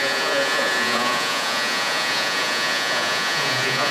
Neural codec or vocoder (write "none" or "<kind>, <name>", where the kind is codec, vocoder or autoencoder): vocoder, Vocos